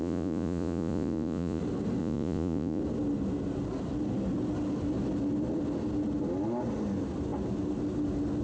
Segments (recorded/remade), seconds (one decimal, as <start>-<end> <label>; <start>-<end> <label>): 0.0-1.6 remade; 1.6-2.0 recorded; 2.0-2.8 remade; 2.8-8.4 recorded